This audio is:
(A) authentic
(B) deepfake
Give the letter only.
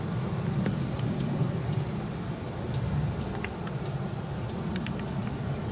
A